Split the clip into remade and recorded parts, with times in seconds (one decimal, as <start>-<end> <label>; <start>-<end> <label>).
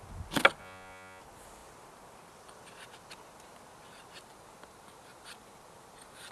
0.0-0.6 recorded; 0.6-1.2 remade; 1.2-6.3 recorded